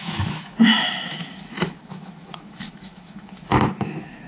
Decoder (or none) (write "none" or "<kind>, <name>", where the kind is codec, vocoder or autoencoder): autoencoder, DAC-VAE